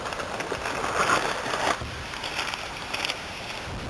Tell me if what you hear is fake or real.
real